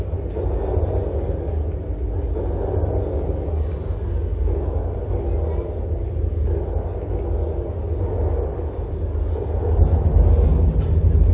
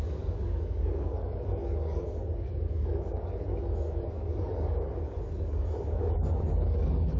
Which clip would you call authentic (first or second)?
first